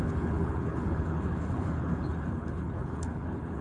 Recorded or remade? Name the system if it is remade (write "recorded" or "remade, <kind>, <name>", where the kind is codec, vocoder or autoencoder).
remade, codec, HILCodec